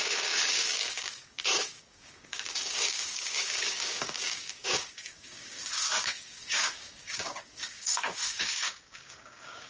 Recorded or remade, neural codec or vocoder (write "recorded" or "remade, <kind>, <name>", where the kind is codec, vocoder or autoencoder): remade, codec, DAC